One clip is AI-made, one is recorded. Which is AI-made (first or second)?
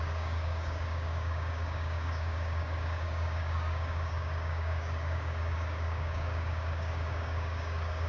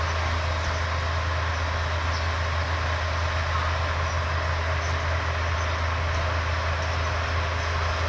first